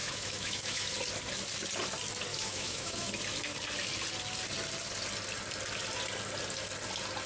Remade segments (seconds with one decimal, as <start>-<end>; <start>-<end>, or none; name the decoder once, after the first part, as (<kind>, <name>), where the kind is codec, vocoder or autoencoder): 0.0-0.9 (autoencoder, DAC-VAE); 2.3-3.1